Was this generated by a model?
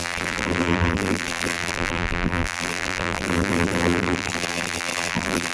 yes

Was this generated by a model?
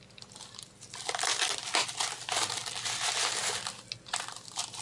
no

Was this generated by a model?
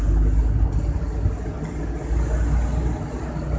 no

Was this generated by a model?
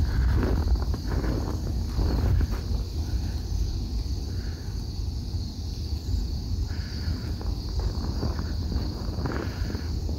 no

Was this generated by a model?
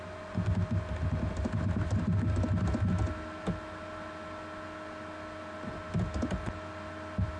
no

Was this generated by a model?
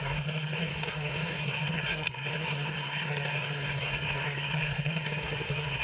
yes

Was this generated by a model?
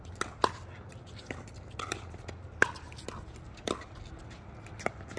no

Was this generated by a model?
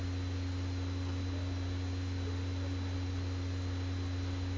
no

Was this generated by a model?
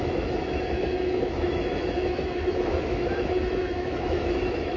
yes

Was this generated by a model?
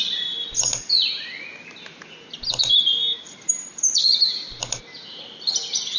no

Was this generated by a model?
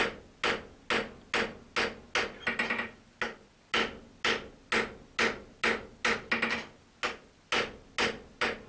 no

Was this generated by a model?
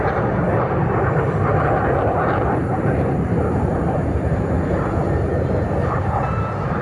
yes